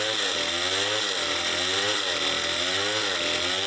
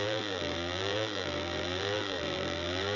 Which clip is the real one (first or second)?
first